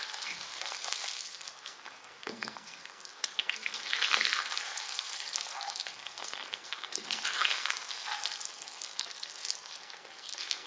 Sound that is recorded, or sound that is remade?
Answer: remade